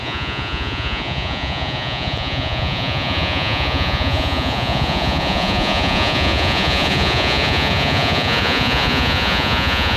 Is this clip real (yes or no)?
no